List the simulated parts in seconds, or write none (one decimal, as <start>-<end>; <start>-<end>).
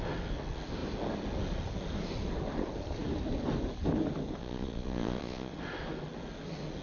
4.4-5.5